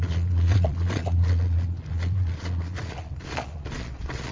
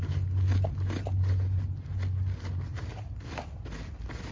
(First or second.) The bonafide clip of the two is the second